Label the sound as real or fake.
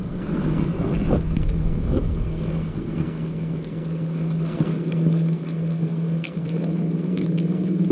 fake